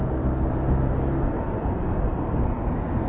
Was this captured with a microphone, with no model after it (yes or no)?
yes